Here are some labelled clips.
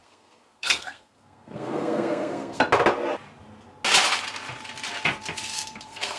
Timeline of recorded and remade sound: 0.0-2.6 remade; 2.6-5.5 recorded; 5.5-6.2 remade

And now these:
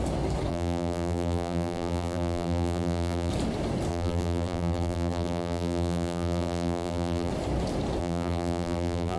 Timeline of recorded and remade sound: 0.0-0.5 recorded; 0.5-3.3 remade; 3.3-3.9 recorded; 3.9-7.3 remade; 7.3-8.0 recorded; 8.0-9.2 remade

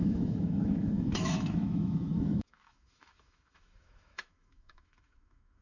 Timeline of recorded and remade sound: 0.0-5.6 remade

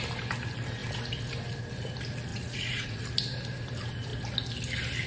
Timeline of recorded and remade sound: 0.0-2.3 recorded; 2.3-3.0 remade; 3.0-5.1 recorded